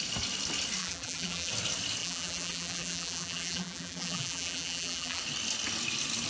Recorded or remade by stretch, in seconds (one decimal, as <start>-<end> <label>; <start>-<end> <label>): 0.0-0.8 recorded; 0.8-1.5 remade; 1.5-2.0 recorded; 2.0-5.2 remade; 5.2-6.3 recorded